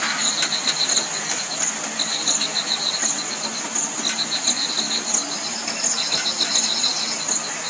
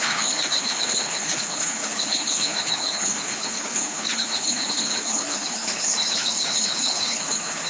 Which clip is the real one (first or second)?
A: first